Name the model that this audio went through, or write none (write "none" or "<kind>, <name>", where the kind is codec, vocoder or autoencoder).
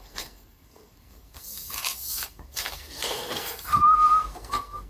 codec, SNAC